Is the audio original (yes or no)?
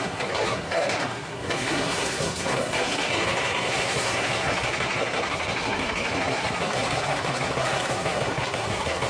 no